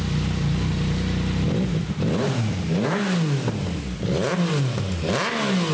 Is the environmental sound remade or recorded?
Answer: recorded